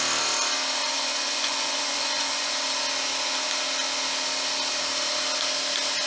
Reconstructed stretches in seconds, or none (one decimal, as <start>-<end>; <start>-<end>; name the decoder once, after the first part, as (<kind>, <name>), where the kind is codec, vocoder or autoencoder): 0.8-2.5 (vocoder, Vocos)